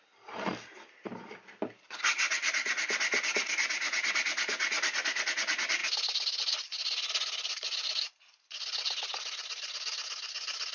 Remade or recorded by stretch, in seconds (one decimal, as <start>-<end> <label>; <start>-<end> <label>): 0.0-10.7 recorded